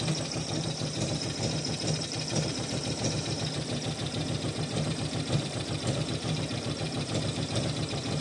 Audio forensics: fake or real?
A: fake